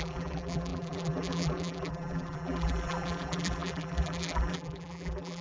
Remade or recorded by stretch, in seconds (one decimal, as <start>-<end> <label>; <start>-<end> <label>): 0.0-5.4 remade